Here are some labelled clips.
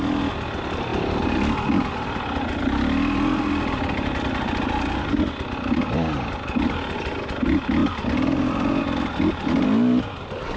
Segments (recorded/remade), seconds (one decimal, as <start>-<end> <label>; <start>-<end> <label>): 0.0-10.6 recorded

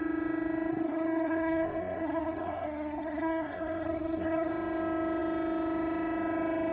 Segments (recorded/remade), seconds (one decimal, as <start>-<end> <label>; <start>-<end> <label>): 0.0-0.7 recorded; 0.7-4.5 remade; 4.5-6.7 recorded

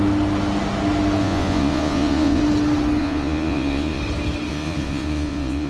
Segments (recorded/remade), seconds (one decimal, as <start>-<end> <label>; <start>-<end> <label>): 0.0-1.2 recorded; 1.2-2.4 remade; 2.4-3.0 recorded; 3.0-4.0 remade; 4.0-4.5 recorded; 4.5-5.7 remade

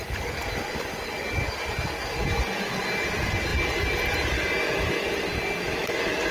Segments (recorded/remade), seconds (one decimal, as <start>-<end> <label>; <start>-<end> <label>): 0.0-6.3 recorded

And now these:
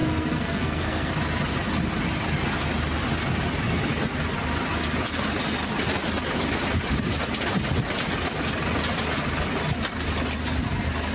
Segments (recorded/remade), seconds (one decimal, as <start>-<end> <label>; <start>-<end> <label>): 0.0-1.1 remade; 1.1-11.1 recorded

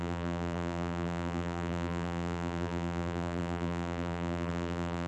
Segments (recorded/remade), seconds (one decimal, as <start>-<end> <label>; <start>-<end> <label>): 0.0-5.1 remade